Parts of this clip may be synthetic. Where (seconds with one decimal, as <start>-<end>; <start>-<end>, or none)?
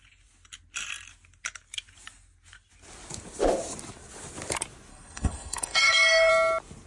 4.9-6.3